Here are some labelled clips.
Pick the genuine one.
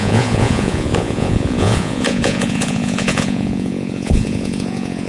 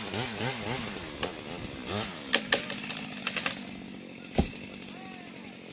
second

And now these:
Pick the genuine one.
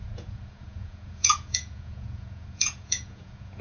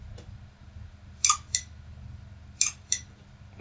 second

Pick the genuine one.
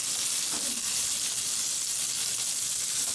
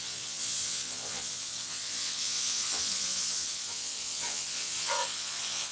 first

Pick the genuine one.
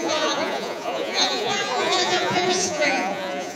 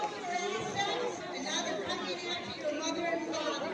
second